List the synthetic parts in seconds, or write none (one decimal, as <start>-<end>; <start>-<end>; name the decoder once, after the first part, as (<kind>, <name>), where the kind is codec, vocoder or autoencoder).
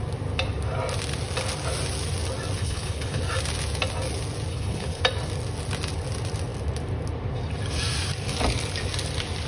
2.6-3.2 (codec, HILCodec); 4.5-5.0